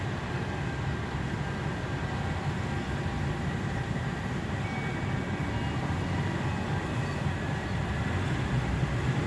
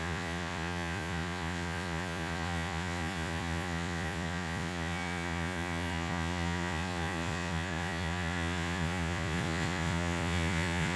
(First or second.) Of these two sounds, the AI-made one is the second